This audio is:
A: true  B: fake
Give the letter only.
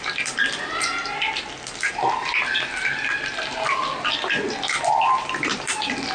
A